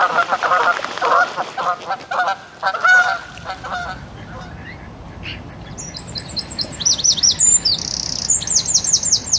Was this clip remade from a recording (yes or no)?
no